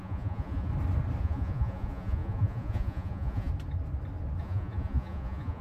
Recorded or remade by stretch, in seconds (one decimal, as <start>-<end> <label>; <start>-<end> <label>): 0.0-0.7 remade; 0.7-1.2 recorded; 1.2-3.5 remade; 3.5-4.4 recorded; 4.4-5.6 remade